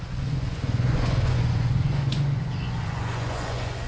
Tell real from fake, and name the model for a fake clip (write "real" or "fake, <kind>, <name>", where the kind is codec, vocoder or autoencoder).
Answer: fake, vocoder, Vocos